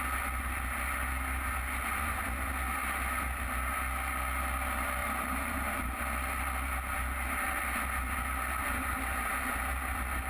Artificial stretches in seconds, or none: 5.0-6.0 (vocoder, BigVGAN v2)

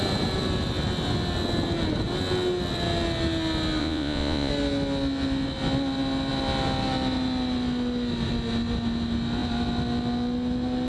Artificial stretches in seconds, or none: 3.8-4.5 (vocoder, Vocos)

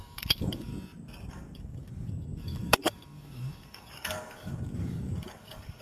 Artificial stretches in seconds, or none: 0.0-0.7 (codec, DAC); 1.3-5.8